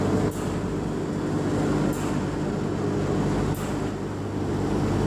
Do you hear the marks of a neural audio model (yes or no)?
no